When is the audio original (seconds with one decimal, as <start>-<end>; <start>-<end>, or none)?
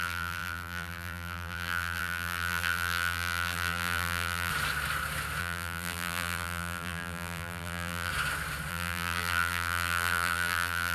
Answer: 4.5-5.4; 8.1-8.7